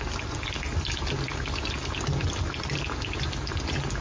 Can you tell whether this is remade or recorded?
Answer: recorded